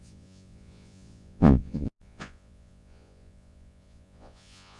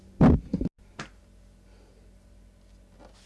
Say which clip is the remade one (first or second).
first